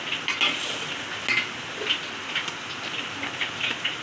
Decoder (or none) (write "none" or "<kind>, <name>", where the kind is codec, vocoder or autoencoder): none